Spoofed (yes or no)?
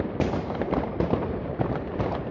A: yes